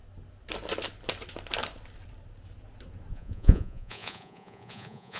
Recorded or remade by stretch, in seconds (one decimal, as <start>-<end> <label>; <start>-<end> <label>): 0.0-3.1 recorded; 3.1-5.2 remade